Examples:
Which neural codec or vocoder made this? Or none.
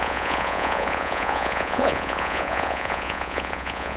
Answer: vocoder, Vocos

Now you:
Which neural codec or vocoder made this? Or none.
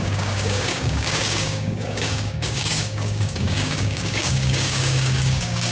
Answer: codec, DAC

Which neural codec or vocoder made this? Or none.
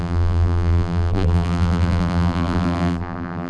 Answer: vocoder, BigVGAN v2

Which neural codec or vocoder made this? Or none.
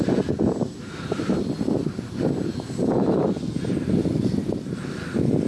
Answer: none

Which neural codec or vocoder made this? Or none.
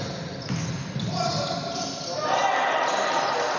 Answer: none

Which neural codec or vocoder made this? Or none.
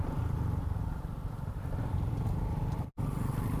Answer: none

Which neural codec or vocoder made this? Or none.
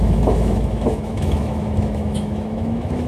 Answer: autoencoder, DAC-VAE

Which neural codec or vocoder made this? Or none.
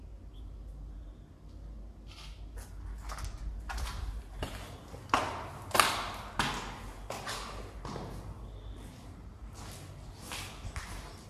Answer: none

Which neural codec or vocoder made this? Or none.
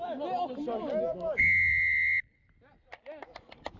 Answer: none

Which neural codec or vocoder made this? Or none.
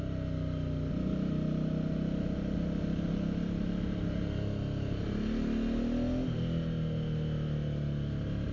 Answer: none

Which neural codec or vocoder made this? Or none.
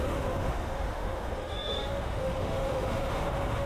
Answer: autoencoder, DAC-VAE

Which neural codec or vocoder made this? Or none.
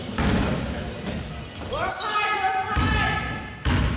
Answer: none